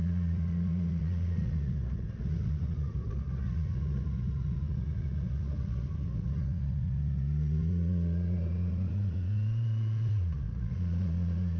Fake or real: fake